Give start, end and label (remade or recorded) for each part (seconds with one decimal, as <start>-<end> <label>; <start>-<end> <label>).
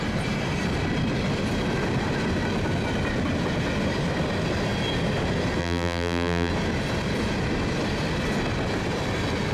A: 0.0-5.6 recorded; 5.6-6.5 remade; 6.5-9.5 recorded